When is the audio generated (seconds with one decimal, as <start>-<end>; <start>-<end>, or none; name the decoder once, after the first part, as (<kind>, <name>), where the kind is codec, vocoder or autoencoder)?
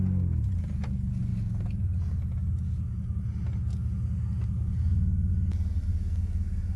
5.9-6.8 (codec, SNAC)